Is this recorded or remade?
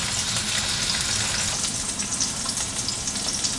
recorded